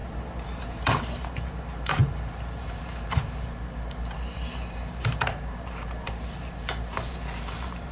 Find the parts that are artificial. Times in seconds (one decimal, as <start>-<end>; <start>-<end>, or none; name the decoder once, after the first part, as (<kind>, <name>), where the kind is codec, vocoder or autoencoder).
0.0-7.9 (vocoder, BigVGAN v2)